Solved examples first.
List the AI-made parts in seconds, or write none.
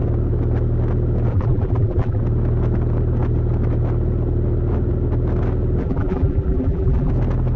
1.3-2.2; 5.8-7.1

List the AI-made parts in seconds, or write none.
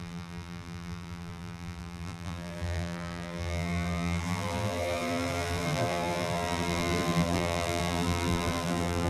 0.0-9.1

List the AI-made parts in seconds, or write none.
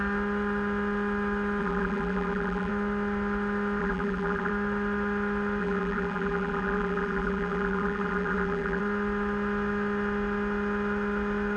1.6-2.7; 3.8-4.5; 5.6-8.8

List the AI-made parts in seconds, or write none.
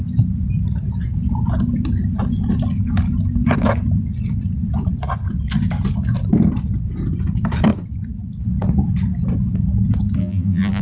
10.2-10.8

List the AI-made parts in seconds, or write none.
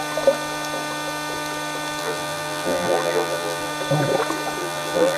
2.0-3.7; 4.6-5.2